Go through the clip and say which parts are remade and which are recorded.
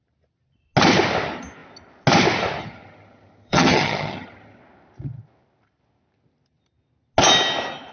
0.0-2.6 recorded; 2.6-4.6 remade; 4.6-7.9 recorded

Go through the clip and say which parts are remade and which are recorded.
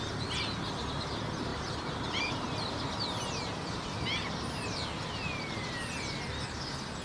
0.0-1.5 recorded; 1.5-5.7 remade; 5.7-7.0 recorded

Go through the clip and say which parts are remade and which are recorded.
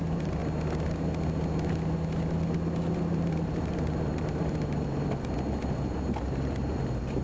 0.0-0.4 remade; 0.4-3.0 recorded; 3.0-7.2 remade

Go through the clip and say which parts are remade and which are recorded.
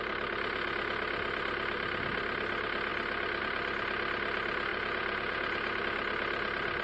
0.0-4.7 recorded; 4.7-5.8 remade; 5.8-6.8 recorded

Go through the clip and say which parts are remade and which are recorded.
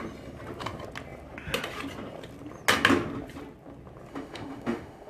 0.0-4.1 recorded; 4.1-5.1 remade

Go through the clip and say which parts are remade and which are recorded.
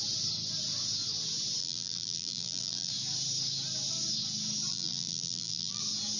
0.0-1.6 recorded; 1.6-2.9 remade; 2.9-4.7 recorded; 4.7-5.8 remade; 5.8-6.2 recorded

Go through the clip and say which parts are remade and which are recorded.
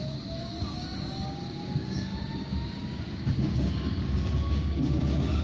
0.0-5.4 remade